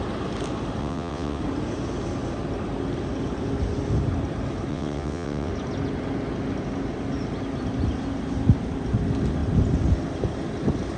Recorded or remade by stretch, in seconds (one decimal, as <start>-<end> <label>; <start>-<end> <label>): 0.0-0.8 recorded; 0.8-1.4 remade; 1.4-4.7 recorded; 4.7-5.5 remade; 5.5-11.0 recorded